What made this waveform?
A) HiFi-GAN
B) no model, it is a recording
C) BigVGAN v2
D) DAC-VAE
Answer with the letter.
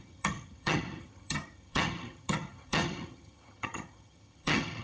A